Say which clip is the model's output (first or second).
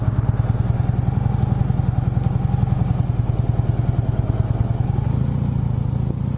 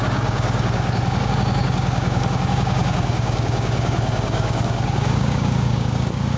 second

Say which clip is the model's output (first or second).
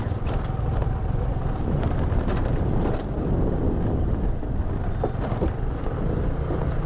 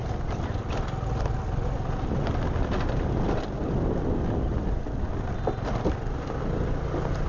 first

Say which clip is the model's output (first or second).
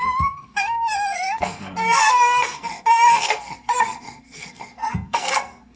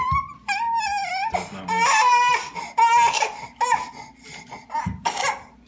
first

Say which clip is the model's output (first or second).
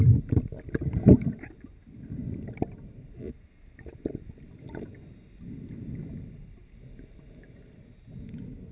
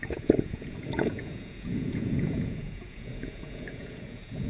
second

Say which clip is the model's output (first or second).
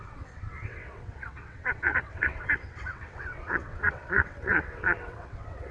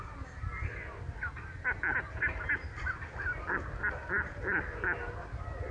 first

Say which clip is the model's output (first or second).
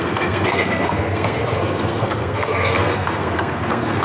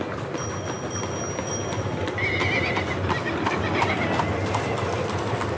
first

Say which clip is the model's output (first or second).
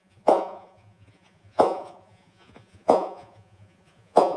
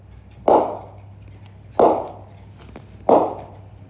first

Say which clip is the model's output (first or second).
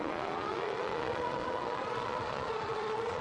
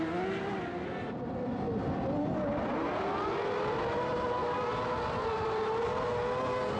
first